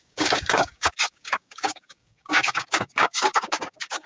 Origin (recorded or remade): remade